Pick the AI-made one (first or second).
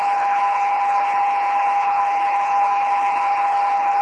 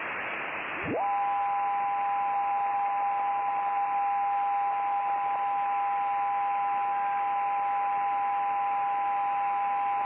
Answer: first